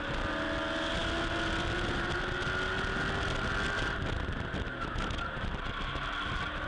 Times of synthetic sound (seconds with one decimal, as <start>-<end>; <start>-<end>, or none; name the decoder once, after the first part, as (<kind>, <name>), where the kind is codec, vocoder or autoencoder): none